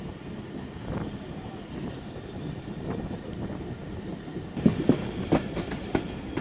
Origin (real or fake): real